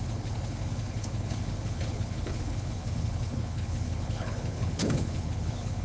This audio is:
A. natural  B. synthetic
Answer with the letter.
B